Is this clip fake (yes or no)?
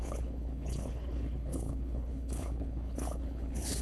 yes